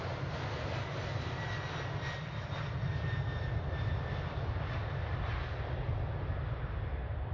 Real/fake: real